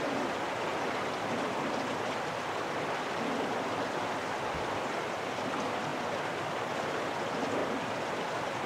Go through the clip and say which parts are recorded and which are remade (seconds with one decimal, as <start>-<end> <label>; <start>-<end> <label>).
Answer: 0.0-8.7 recorded